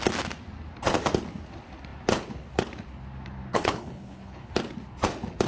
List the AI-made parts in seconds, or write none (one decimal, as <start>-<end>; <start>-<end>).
3.5-4.5